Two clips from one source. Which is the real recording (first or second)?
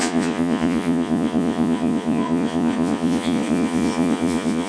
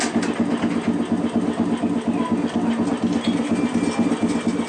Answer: second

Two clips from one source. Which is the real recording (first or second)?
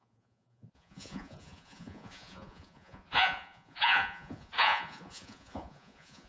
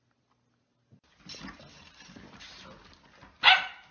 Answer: second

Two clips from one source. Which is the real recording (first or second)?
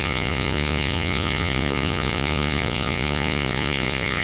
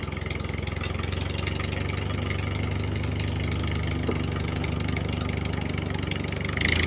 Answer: second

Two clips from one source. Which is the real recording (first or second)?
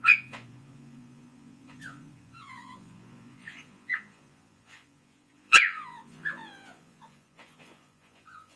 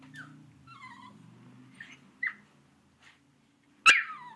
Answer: second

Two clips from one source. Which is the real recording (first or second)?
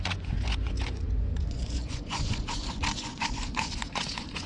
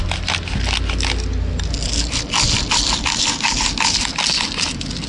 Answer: second